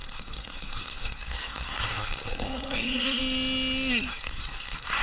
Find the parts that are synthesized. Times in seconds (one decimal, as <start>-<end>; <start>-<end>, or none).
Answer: 0.0-3.2; 4.1-5.0